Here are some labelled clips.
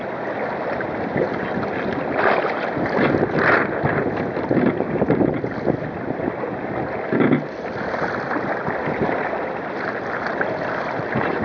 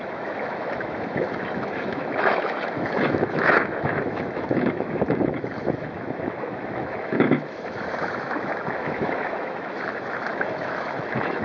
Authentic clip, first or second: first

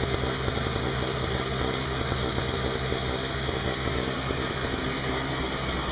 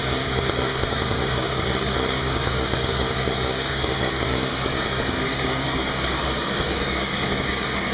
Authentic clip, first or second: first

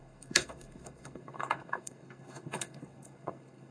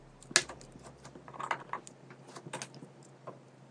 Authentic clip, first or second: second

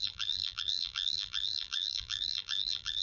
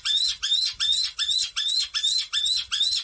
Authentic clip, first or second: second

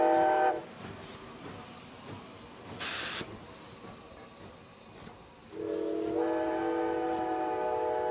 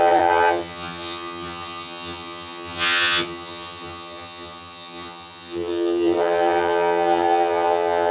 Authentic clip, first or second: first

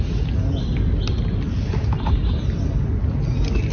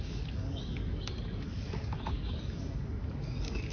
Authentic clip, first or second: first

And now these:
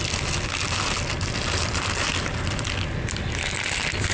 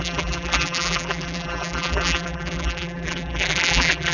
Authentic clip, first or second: first